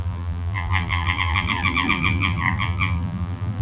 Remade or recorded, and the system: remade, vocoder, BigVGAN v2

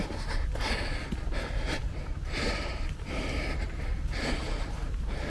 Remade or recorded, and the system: recorded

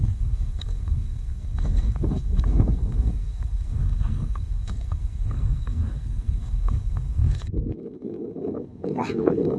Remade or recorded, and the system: remade, codec, SNAC